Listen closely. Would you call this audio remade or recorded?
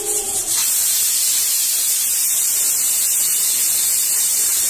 recorded